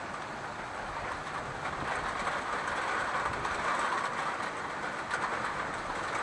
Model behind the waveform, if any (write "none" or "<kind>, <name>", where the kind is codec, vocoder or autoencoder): none